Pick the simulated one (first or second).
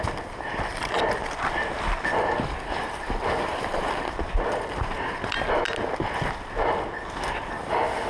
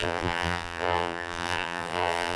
second